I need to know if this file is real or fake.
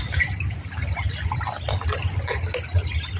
real